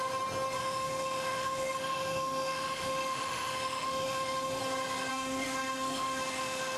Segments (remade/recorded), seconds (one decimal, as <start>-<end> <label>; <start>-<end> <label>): 0.0-0.6 recorded; 0.6-4.6 remade; 4.6-5.1 recorded; 5.1-6.8 remade